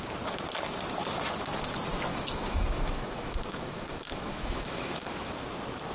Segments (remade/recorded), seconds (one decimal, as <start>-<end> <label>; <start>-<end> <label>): 0.0-2.1 recorded; 2.1-5.3 remade; 5.3-5.9 recorded